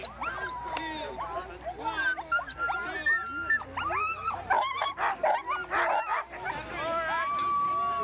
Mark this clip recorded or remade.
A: recorded